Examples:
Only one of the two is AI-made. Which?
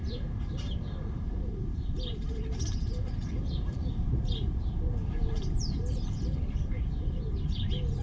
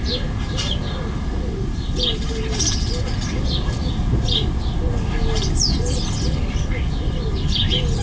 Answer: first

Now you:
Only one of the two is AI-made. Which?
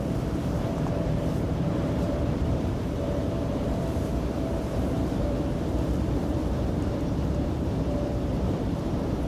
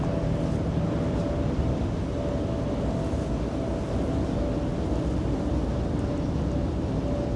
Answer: first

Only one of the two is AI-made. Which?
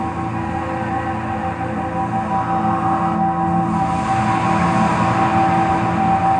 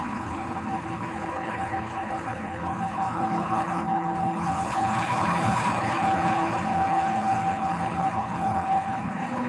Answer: second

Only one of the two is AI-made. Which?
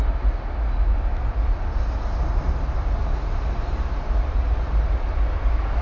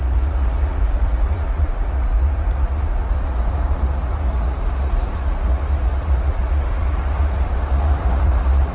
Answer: second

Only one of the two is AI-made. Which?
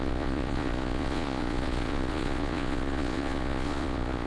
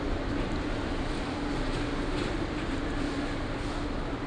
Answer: first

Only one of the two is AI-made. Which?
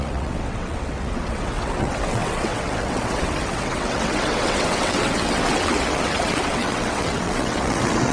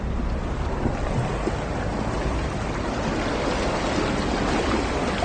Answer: first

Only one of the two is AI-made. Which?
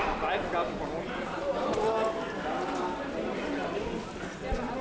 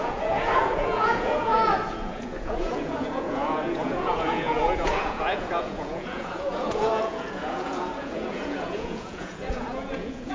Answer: second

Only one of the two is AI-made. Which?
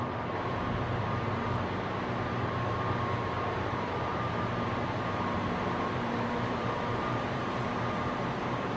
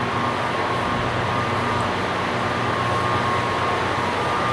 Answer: first